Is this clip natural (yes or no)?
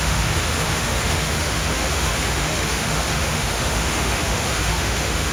no